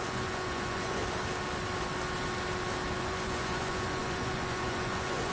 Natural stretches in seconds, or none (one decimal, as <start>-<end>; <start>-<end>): 1.0-3.0